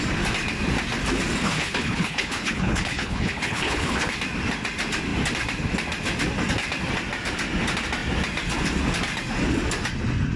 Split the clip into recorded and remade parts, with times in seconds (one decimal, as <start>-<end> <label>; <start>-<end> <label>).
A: 0.0-1.4 recorded; 1.4-4.1 remade; 4.1-10.4 recorded